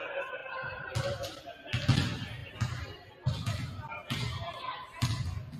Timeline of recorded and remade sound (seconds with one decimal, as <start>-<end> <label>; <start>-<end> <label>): 0.0-0.4 recorded; 0.4-1.4 remade; 1.4-2.4 recorded; 2.4-3.1 remade; 3.1-4.0 recorded; 4.0-5.0 remade; 5.0-5.6 recorded